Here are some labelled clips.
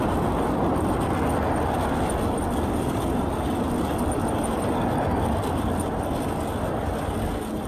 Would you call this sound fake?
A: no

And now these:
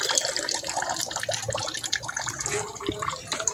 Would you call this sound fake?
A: yes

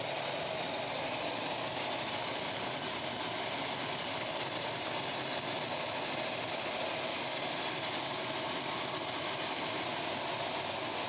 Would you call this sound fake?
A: no